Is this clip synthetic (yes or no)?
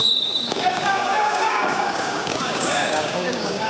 yes